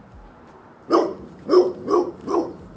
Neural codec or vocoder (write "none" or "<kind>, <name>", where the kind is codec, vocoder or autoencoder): vocoder, BigVGAN v2